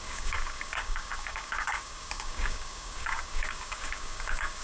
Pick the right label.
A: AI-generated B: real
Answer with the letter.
A